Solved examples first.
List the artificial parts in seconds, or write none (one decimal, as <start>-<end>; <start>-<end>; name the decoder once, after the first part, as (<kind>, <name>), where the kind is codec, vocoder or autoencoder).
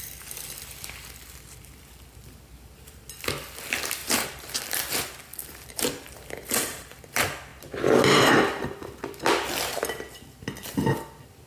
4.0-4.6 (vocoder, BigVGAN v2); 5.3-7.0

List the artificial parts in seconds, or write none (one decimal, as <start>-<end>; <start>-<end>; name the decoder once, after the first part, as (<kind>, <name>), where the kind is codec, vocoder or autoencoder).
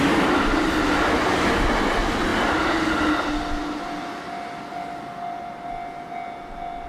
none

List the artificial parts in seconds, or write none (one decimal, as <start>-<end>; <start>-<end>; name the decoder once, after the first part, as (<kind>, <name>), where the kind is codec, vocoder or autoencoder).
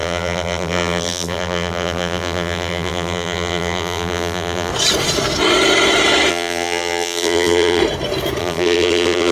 0.0-4.7 (vocoder, BigVGAN v2); 6.3-7.8; 8.4-9.3